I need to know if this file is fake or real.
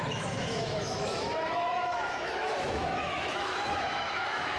fake